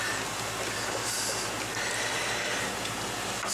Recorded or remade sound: recorded